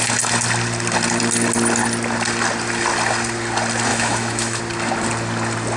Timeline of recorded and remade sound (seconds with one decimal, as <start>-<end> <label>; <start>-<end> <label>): 0.0-3.9 recorded; 3.9-4.6 remade; 4.6-5.8 recorded